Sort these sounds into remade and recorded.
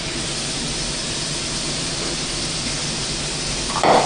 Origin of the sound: recorded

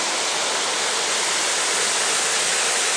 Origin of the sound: recorded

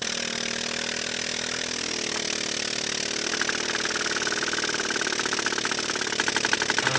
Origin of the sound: recorded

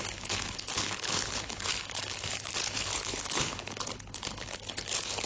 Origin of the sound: remade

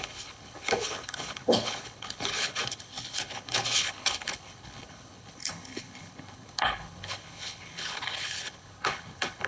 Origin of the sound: remade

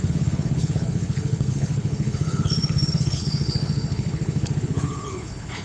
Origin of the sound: remade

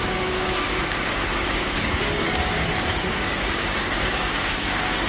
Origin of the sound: remade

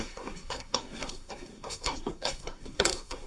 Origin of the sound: remade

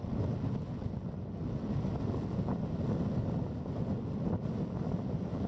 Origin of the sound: recorded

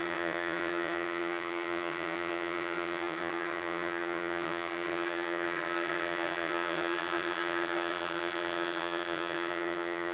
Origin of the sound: remade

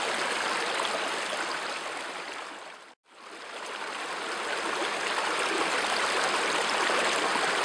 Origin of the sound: recorded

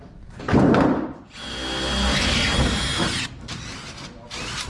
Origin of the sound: recorded